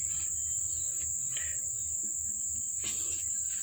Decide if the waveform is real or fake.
real